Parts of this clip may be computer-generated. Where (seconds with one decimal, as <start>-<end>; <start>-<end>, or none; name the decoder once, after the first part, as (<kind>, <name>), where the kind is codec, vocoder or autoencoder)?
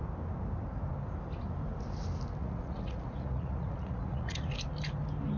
2.4-4.5 (vocoder, Vocos)